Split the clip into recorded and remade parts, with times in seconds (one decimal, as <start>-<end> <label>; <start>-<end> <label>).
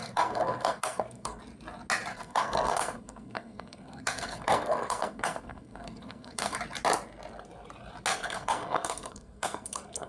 0.0-1.4 remade; 1.4-2.1 recorded; 2.1-6.6 remade; 6.6-8.1 recorded; 8.1-10.1 remade